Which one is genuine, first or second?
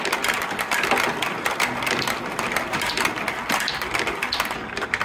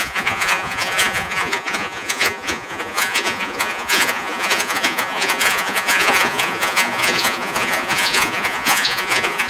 first